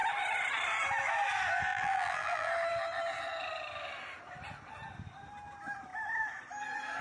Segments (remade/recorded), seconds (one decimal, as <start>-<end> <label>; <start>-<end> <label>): 0.0-1.7 recorded; 1.7-2.5 remade; 2.5-7.0 recorded